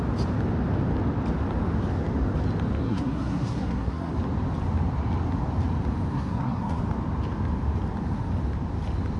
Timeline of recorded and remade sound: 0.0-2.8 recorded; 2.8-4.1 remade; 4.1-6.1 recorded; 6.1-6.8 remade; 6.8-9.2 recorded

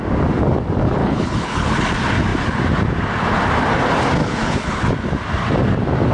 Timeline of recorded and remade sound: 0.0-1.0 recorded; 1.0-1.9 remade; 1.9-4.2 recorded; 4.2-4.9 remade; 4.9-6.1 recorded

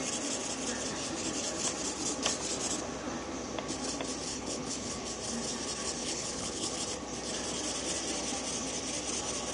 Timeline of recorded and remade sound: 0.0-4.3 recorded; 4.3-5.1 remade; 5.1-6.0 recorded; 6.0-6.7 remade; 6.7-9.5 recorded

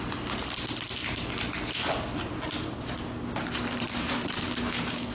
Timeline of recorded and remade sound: 0.0-5.1 recorded

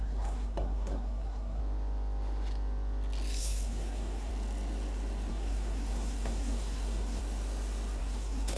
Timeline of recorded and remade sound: 0.0-1.6 remade; 1.6-3.4 recorded; 3.4-4.3 remade; 4.3-5.3 recorded; 5.3-7.2 remade; 7.2-8.0 recorded; 8.0-8.6 remade